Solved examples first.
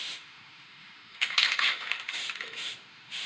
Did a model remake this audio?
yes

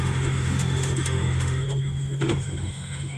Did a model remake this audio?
yes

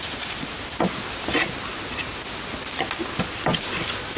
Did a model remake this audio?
no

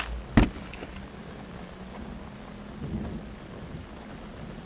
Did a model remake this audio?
no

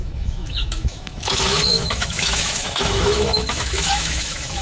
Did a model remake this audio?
yes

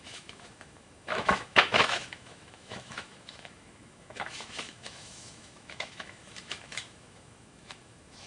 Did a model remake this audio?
yes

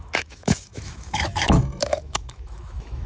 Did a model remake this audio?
yes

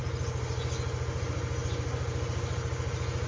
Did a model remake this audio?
no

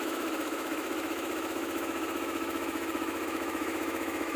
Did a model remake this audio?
yes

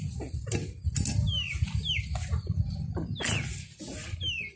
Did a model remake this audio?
no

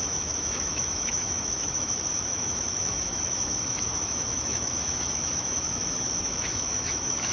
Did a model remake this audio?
yes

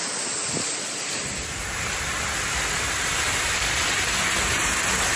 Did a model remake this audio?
no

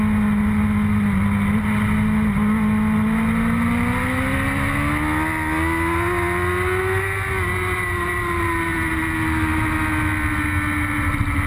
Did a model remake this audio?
no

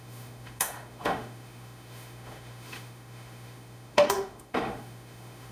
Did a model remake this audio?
yes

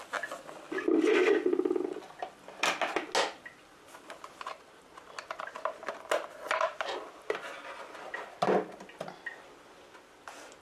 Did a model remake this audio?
no